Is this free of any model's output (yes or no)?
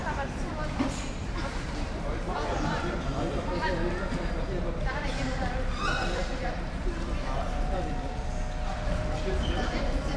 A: no